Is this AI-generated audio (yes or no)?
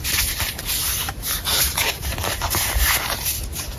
yes